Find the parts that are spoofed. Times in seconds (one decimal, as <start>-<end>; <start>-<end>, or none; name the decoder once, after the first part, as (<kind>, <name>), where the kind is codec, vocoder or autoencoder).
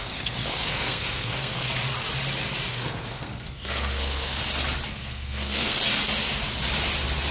0.0-1.7 (codec, SNAC); 2.7-4.4; 4.9-5.8